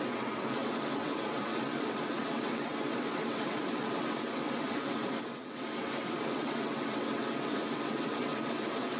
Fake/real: fake